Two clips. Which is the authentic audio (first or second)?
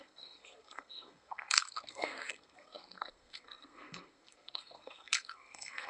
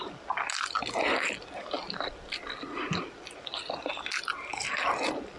second